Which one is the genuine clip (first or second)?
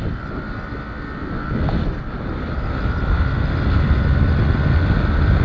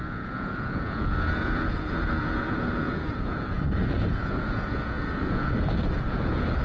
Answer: first